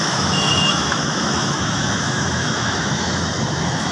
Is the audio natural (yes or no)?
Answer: no